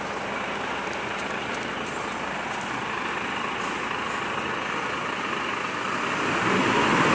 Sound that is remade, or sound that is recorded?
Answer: recorded